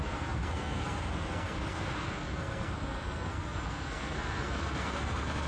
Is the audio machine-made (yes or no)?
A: yes